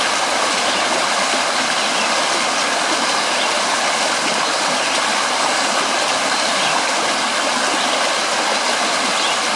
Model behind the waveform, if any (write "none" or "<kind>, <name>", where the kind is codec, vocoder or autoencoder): none